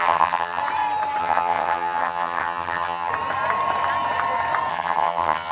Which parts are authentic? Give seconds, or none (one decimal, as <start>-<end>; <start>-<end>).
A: 0.6-1.2; 3.1-4.7